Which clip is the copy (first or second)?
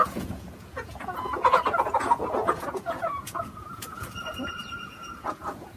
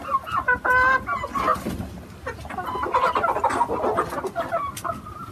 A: first